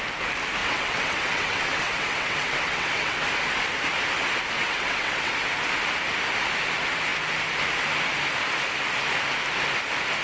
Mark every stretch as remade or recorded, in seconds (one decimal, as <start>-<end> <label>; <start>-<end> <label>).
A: 0.0-0.6 recorded; 0.6-3.3 remade; 3.3-4.6 recorded; 4.6-5.3 remade; 5.3-10.2 recorded

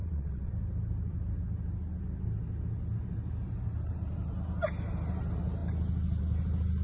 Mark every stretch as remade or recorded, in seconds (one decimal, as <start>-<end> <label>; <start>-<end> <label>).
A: 0.0-0.5 remade; 0.5-6.8 recorded

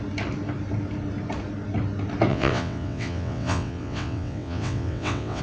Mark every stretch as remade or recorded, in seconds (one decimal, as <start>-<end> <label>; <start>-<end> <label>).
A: 0.0-2.3 recorded; 2.3-5.4 remade

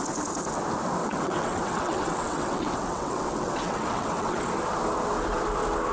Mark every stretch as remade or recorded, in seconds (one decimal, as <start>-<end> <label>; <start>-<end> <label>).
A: 0.0-1.0 recorded; 1.0-4.4 remade; 4.4-5.9 recorded

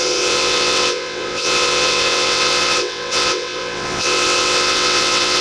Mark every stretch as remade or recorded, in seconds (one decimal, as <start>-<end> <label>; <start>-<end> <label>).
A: 0.0-5.4 remade

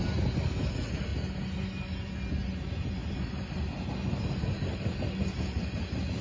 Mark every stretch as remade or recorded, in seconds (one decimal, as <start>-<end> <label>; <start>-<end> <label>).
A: 0.0-6.2 recorded

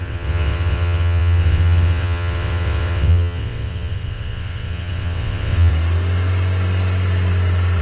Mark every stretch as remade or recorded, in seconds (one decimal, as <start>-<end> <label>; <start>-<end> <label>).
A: 0.0-5.7 remade; 5.7-7.8 recorded

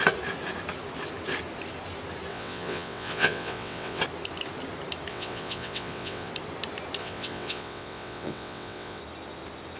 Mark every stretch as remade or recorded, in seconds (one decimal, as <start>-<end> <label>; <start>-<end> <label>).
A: 0.0-2.3 recorded; 2.3-4.0 remade; 4.0-5.1 recorded; 5.1-6.3 remade; 6.3-7.0 recorded; 7.0-9.0 remade; 9.0-9.8 recorded